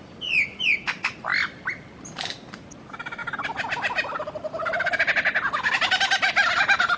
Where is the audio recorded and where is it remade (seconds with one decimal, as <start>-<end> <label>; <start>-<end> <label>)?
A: 0.0-7.0 recorded